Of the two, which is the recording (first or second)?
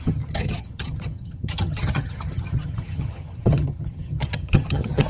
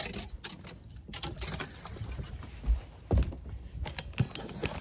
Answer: second